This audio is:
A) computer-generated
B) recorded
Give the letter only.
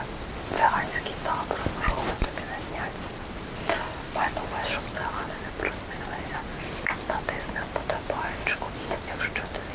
B